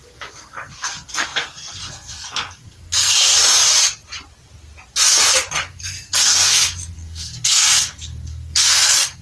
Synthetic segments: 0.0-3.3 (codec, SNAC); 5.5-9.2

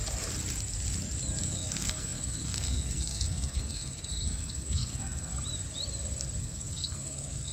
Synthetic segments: 1.4-5.3 (codec, SNAC); 6.4-7.5

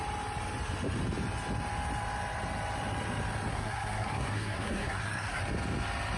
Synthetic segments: 3.5-5.4 (codec, SNAC)